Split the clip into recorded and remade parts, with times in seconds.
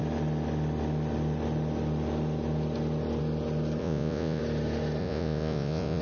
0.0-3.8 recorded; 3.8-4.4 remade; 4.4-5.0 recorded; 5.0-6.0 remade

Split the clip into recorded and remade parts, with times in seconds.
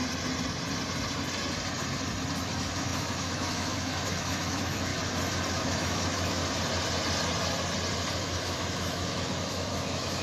0.0-2.4 recorded; 2.4-4.9 remade; 4.9-5.5 recorded; 5.5-6.4 remade; 6.4-8.2 recorded; 8.2-10.2 remade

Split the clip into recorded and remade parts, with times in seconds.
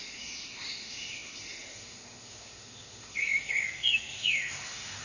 0.0-5.0 remade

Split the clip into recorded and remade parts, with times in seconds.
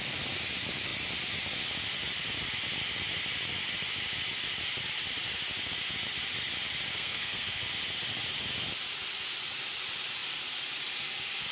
0.0-6.9 recorded; 6.9-7.6 remade; 7.6-11.5 recorded